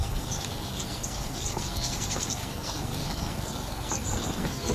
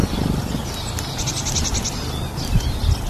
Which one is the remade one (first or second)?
first